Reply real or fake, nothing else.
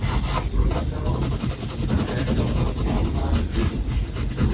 real